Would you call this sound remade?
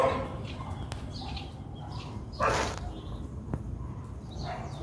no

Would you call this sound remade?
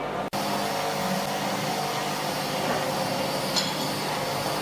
no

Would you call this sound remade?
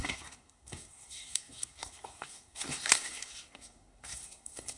yes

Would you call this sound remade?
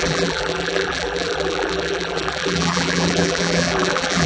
yes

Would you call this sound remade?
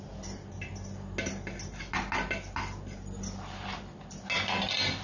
no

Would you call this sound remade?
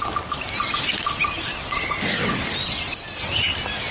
no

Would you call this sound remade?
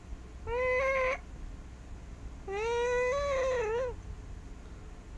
no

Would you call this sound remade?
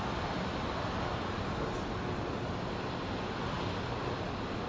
no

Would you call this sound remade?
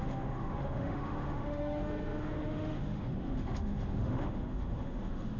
yes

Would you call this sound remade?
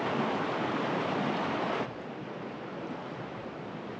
no